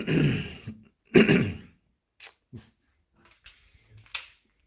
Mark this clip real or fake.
real